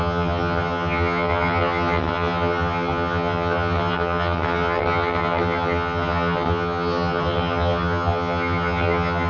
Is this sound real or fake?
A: fake